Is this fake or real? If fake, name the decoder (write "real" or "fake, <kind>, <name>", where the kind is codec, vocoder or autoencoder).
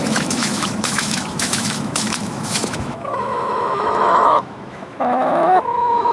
fake, autoencoder, DAC-VAE